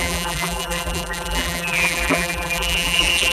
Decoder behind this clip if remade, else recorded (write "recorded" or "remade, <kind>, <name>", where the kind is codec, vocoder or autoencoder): remade, vocoder, BigVGAN v2